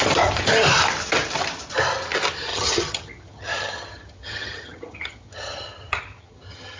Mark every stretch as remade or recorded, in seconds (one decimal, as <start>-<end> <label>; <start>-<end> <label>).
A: 0.0-2.5 recorded; 2.5-6.8 remade